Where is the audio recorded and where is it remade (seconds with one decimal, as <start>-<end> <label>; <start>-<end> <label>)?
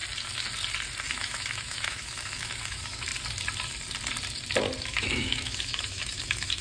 0.0-1.1 recorded; 1.1-3.1 remade; 3.1-4.8 recorded; 4.8-6.6 remade